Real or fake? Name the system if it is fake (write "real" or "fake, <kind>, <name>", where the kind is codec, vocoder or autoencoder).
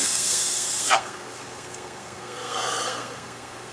fake, codec, SNAC